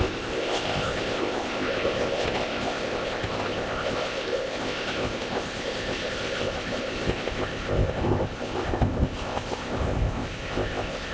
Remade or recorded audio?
remade